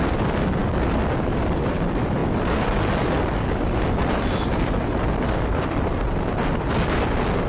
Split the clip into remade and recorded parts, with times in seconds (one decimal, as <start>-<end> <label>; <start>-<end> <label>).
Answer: 0.0-7.5 remade